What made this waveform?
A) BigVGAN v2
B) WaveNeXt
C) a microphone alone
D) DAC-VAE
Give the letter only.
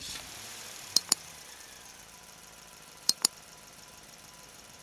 A